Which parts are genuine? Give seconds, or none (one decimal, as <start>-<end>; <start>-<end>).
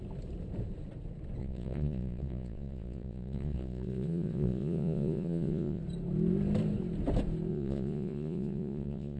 0.0-1.4; 5.8-7.5